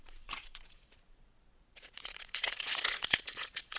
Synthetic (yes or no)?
yes